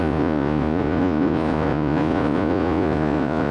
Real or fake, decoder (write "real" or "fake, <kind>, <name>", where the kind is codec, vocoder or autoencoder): fake, vocoder, Vocos